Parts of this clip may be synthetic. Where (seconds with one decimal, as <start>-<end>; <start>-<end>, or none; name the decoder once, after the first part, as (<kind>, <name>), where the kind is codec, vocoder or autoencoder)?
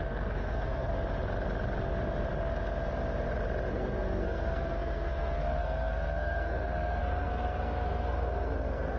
0.0-0.9 (codec, SNAC); 3.7-9.0